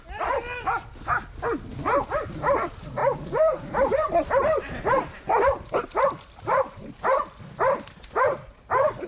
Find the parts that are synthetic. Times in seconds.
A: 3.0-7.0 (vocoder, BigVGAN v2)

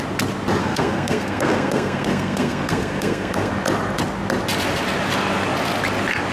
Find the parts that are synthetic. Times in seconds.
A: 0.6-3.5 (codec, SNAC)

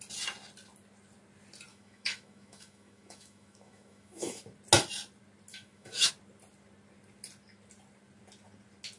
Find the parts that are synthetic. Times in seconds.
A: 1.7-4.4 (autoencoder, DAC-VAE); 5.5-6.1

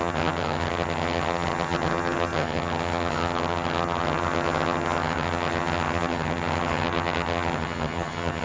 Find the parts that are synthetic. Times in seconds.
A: 0.0-8.4 (vocoder, HiFi-GAN)

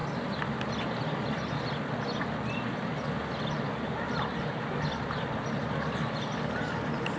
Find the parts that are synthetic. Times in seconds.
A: none

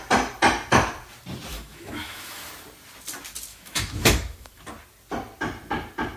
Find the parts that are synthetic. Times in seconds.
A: 1.5-2.5 (autoencoder, DAC-VAE); 3.5-4.6

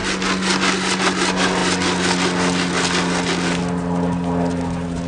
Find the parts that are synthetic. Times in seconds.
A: none

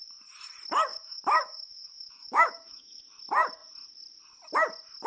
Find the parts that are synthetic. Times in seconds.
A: 0.9-3.0 (autoencoder, DAC-VAE)